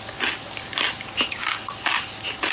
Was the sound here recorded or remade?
recorded